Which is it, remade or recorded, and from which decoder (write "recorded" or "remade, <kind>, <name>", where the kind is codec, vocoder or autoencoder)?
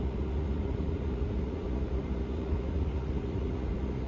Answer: remade, vocoder, Vocos